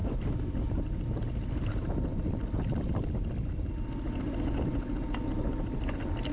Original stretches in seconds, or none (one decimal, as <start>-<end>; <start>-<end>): 3.7-6.3